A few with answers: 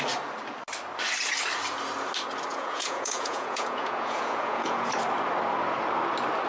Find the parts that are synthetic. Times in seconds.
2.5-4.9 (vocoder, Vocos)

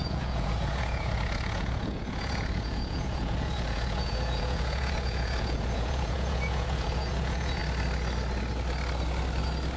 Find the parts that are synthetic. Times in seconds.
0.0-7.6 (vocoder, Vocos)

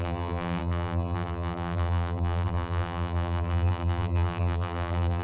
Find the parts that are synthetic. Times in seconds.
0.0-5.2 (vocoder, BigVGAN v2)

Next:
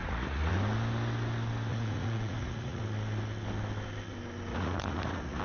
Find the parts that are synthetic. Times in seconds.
0.0-0.5 (vocoder, Vocos); 1.7-2.8; 4.5-5.4